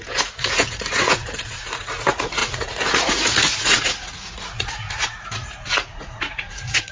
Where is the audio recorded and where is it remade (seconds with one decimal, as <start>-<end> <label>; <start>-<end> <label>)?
0.0-6.9 remade